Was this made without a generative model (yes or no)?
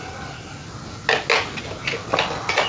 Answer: yes